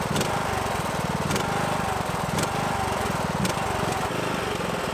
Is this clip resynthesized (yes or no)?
no